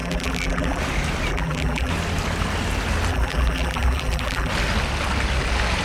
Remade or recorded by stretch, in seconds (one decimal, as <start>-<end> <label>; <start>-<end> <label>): 0.0-0.8 remade; 0.8-1.3 recorded; 1.3-1.9 remade; 1.9-3.1 recorded; 3.1-4.5 remade; 4.5-5.8 recorded